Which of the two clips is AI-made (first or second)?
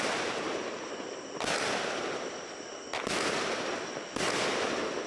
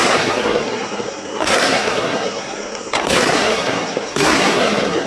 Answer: second